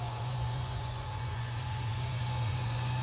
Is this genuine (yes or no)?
no